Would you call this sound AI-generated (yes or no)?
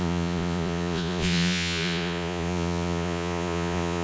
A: yes